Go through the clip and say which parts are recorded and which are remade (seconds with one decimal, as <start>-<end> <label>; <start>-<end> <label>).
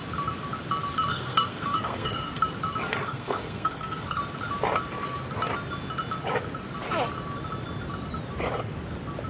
0.0-1.1 recorded; 1.1-2.4 remade; 2.4-3.0 recorded; 3.0-4.2 remade; 4.2-9.3 recorded